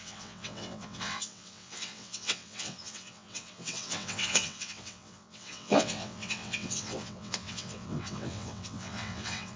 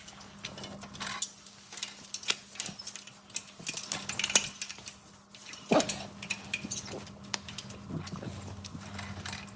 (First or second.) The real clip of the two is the second